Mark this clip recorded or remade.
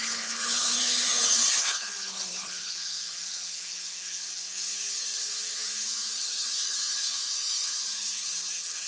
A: remade